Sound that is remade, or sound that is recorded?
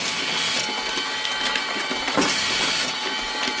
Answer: recorded